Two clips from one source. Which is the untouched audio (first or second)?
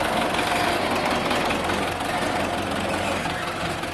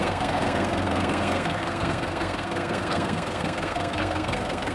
first